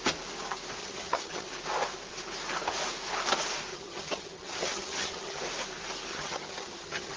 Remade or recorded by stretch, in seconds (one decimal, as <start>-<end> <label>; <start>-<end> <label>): 0.0-0.8 recorded; 0.8-1.5 remade; 1.5-3.7 recorded; 3.7-5.4 remade; 5.4-6.1 recorded; 6.1-7.2 remade